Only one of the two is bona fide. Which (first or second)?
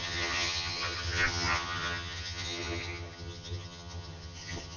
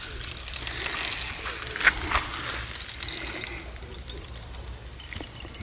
second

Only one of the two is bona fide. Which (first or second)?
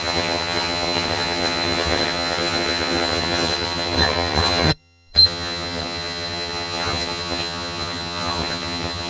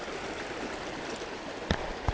second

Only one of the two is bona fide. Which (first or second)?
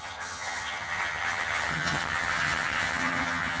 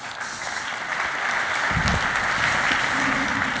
second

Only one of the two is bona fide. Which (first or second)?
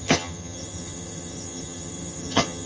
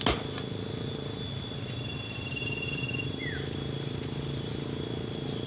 second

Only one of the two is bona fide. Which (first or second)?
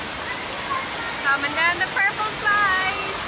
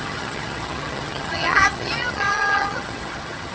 first